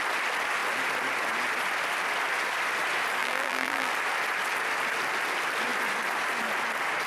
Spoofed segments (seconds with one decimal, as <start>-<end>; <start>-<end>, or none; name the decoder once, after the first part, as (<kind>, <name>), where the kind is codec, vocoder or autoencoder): 3.2-3.9 (vocoder, BigVGAN v2)